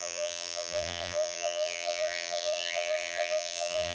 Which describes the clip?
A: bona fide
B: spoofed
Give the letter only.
B